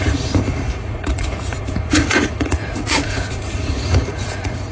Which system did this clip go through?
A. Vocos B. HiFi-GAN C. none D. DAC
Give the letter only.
A